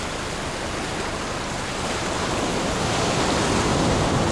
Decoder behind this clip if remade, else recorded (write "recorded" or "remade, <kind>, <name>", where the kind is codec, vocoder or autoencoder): recorded